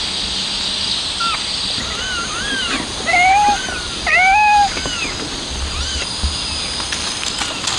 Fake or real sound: real